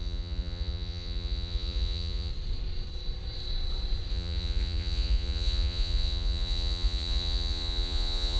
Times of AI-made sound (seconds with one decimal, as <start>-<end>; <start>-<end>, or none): 0.0-2.3; 4.1-8.4

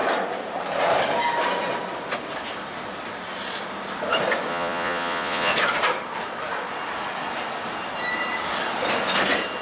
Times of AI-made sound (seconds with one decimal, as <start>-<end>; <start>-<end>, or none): 4.5-5.5

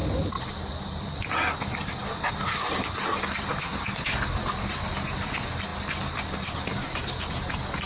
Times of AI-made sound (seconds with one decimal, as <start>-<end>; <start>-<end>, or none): none

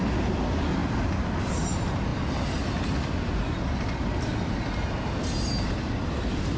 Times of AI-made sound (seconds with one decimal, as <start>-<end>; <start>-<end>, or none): none

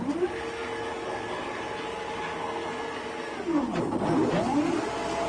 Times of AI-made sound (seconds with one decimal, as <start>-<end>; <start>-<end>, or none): none

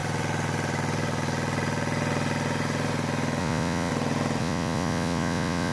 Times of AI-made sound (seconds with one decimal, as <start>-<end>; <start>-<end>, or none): 3.4-3.9; 4.4-5.7

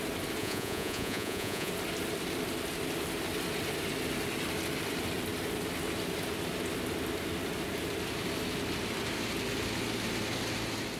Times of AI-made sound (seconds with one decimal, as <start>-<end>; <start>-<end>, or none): 0.4-1.7

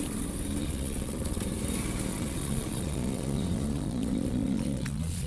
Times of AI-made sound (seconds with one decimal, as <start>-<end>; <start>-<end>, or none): 0.6-1.4; 2.1-5.3